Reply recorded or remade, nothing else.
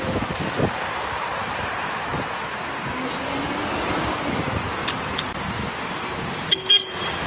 recorded